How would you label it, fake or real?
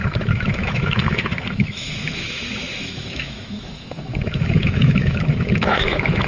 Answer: fake